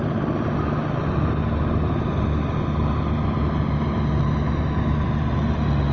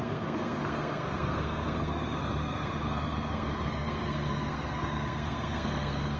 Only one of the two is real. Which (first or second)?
first